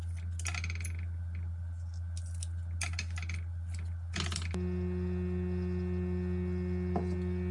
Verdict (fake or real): real